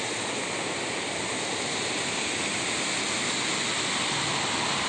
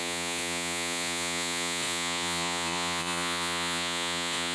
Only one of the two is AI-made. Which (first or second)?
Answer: second